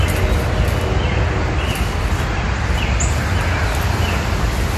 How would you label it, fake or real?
real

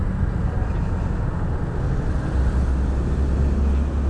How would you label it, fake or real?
real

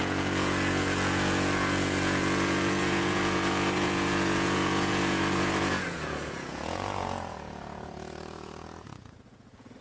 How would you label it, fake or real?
fake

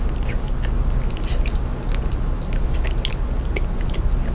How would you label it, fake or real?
real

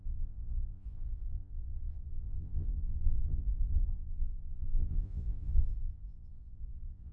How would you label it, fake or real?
fake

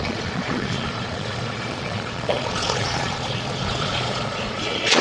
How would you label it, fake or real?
fake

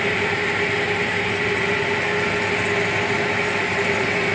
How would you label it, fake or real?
real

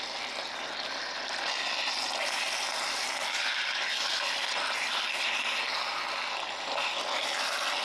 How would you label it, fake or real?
real